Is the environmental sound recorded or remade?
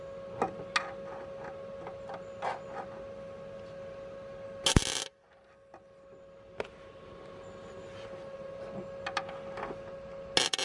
recorded